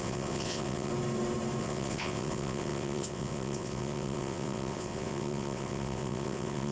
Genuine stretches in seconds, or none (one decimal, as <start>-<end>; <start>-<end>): 0.9-1.6